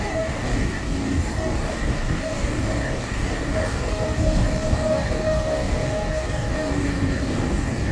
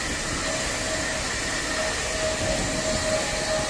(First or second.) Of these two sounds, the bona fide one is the second